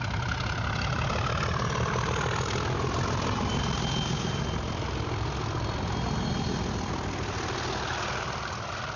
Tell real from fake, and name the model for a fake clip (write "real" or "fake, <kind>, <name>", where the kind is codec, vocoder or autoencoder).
real